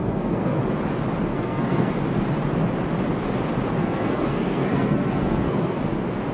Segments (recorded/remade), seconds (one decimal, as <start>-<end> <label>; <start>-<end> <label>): 0.0-0.6 remade; 0.6-1.3 recorded; 1.3-1.9 remade; 1.9-3.8 recorded; 3.8-5.8 remade; 5.8-6.3 recorded